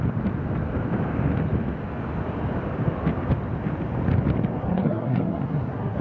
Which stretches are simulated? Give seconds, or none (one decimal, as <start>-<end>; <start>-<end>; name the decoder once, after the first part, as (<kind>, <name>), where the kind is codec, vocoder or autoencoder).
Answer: 4.6-6.0 (codec, SNAC)